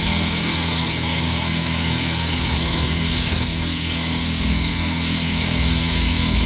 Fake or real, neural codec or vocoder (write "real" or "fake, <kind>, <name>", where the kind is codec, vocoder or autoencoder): fake, codec, SNAC